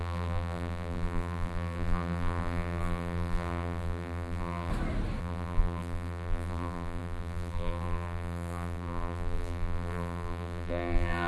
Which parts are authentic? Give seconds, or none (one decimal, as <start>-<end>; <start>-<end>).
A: 4.7-5.2